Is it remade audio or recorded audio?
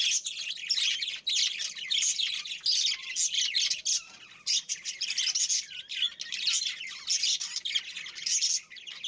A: recorded